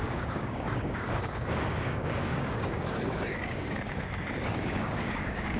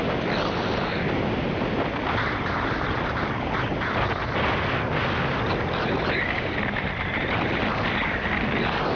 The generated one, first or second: first